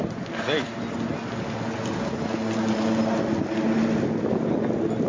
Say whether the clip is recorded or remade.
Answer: recorded